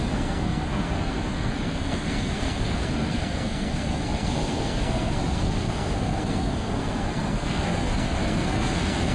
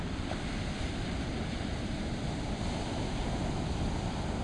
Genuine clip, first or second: second